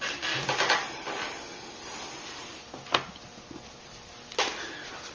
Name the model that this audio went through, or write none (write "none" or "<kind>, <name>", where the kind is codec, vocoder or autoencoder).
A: none